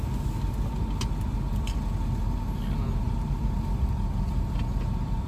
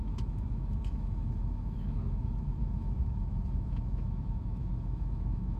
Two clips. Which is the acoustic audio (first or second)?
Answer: first